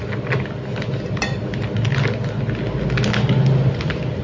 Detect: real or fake real